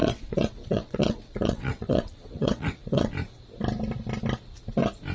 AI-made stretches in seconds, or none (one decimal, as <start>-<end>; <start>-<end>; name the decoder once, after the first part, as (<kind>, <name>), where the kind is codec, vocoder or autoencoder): 0.0-3.1 (vocoder, WaveNeXt)